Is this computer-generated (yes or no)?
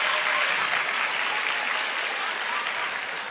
no